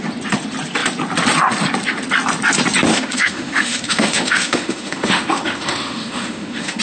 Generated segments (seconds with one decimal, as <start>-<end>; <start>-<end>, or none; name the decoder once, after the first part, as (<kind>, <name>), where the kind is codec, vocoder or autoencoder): 2.9-6.8 (autoencoder, DAC-VAE)